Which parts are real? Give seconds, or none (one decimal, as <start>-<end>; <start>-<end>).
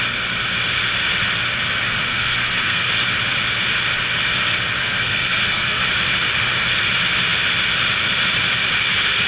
0.0-2.1; 2.9-4.8; 5.8-9.3